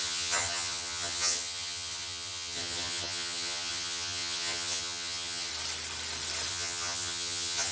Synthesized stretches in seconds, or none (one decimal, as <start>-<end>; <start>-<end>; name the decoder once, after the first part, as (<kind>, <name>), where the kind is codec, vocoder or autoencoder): 0.0-5.5 (vocoder, HiFi-GAN); 6.5-7.7